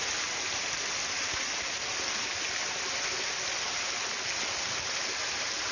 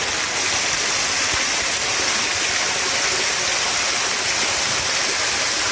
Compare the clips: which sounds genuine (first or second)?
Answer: first